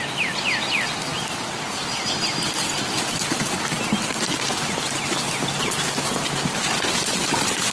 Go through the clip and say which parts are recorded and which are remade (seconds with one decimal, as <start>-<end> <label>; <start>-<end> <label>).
0.0-7.7 recorded